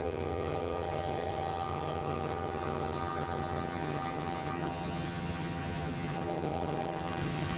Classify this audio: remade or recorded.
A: remade